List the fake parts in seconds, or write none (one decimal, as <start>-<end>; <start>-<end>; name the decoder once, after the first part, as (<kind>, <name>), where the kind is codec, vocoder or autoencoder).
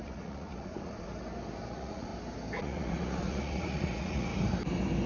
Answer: 0.0-1.1 (vocoder, Vocos); 1.7-2.1; 2.6-4.3